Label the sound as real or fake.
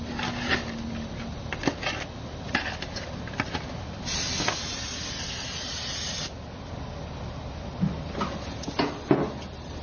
real